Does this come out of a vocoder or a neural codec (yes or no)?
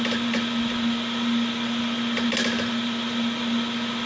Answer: no